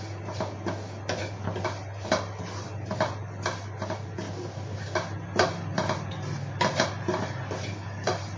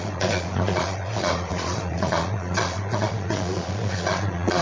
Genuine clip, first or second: first